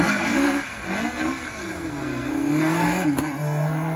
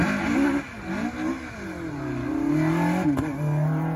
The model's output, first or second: first